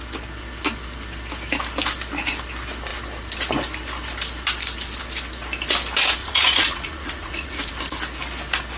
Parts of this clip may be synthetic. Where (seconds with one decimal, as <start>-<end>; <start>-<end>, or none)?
6.2-7.7